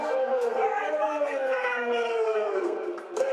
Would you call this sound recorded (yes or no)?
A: no